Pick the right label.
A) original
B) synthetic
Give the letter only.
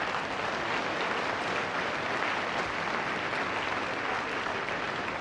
A